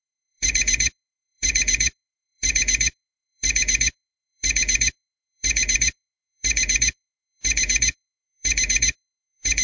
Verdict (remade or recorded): remade